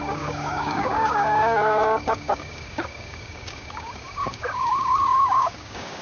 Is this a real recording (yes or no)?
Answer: no